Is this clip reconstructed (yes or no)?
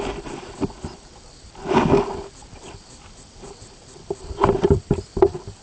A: no